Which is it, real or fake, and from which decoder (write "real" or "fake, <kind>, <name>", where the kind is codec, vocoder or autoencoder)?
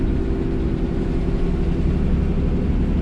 real